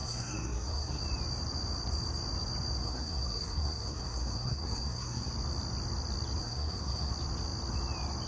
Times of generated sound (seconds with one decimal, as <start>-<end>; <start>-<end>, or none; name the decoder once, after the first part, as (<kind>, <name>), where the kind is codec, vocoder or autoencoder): 0.0-1.0 (codec, SNAC); 2.8-5.3; 6.4-7.1